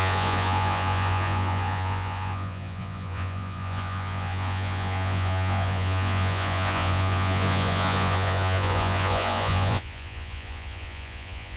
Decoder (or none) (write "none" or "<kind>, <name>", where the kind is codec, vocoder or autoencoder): vocoder, Vocos